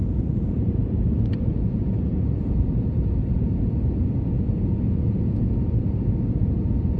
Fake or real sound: fake